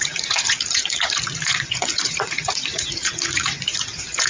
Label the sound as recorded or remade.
remade